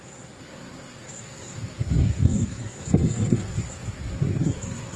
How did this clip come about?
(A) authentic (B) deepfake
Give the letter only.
B